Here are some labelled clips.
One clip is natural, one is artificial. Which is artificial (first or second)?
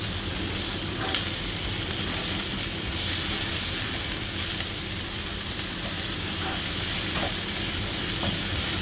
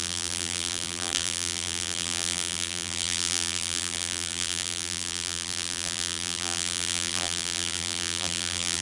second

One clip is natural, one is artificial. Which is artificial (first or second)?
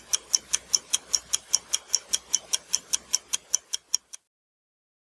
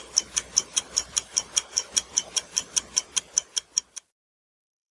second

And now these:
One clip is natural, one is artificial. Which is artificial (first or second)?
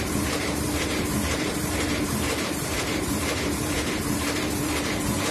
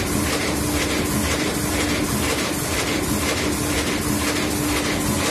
first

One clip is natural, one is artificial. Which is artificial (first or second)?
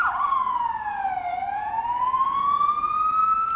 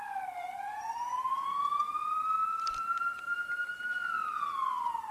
second